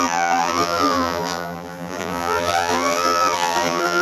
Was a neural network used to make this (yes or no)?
yes